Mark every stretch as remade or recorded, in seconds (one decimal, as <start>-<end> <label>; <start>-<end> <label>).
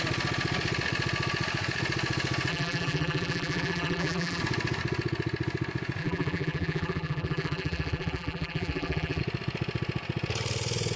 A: 0.0-2.5 recorded; 2.5-4.4 remade; 4.4-6.0 recorded; 6.0-9.2 remade; 9.2-11.0 recorded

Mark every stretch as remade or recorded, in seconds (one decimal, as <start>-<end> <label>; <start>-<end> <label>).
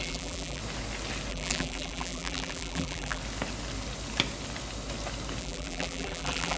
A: 0.0-0.6 remade; 0.6-1.3 recorded; 1.3-3.2 remade; 3.2-5.4 recorded; 5.4-6.6 remade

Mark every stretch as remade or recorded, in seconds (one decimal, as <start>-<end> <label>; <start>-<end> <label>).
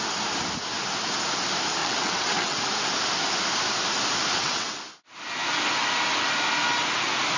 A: 0.0-1.8 recorded; 1.8-2.6 remade; 2.6-4.3 recorded; 4.3-4.8 remade; 4.8-7.4 recorded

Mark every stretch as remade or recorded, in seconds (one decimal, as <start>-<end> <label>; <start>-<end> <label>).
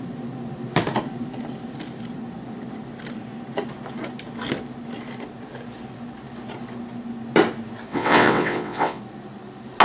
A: 0.0-7.9 recorded; 7.9-9.0 remade; 9.0-9.8 recorded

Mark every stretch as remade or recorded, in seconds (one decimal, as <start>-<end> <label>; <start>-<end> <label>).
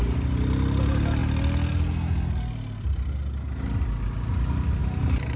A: 0.0-4.8 recorded; 4.8-5.4 remade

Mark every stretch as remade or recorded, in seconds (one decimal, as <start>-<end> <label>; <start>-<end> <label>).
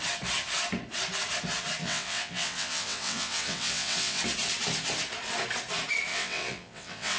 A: 0.0-1.8 recorded; 1.8-4.2 remade; 4.2-6.1 recorded; 6.1-7.2 remade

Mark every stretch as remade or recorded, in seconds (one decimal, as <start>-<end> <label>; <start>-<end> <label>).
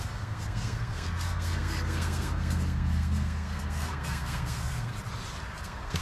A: 0.0-4.9 remade; 4.9-5.6 recorded; 5.6-6.0 remade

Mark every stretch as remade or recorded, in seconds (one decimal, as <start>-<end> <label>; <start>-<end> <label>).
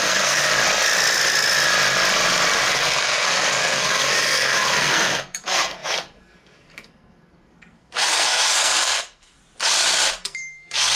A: 0.0-0.5 remade; 0.5-2.7 recorded; 2.7-9.4 remade; 9.4-10.1 recorded; 10.1-11.0 remade